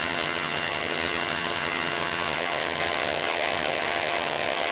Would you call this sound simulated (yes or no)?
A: yes